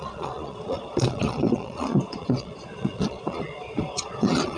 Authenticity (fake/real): fake